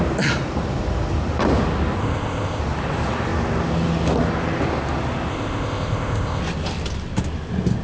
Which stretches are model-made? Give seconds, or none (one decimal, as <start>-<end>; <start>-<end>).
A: 2.0-2.6; 5.3-6.4